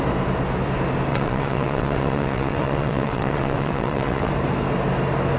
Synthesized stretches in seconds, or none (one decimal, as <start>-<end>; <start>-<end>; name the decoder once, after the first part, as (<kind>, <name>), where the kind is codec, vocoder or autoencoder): 1.1-4.3 (vocoder, WaveNeXt)